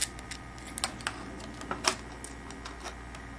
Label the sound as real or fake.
real